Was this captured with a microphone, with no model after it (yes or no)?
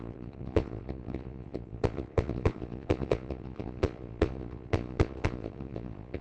no